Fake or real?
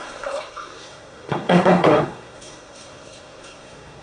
fake